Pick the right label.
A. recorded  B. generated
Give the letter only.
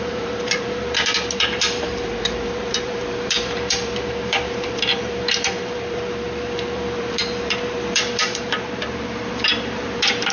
B